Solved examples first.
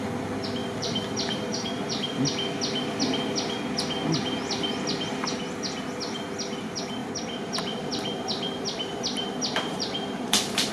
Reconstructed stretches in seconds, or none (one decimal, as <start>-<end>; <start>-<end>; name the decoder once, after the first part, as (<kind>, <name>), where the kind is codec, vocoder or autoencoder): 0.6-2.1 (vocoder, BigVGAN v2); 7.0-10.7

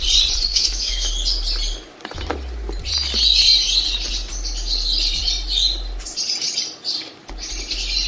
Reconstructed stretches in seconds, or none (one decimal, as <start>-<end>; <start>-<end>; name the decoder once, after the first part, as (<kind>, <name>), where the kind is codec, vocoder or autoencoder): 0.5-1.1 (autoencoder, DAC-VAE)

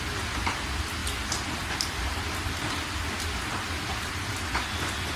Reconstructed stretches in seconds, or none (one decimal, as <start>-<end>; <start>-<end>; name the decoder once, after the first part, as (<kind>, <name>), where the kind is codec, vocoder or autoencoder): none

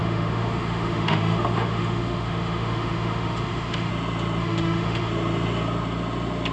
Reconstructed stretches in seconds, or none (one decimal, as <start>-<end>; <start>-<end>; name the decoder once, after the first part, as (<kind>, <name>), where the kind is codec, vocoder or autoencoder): 0.0-3.9 (autoencoder, DAC-VAE); 4.4-5.1

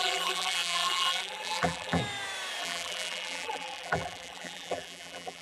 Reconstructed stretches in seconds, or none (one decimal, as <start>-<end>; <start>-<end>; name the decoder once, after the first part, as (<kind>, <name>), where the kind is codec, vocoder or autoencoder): 0.0-2.0 (vocoder, BigVGAN v2); 2.6-5.4